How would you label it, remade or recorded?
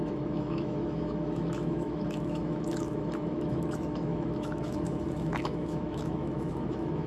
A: remade